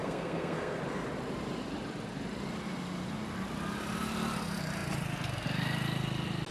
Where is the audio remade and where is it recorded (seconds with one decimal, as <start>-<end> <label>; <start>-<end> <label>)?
0.0-0.8 remade; 0.8-6.5 recorded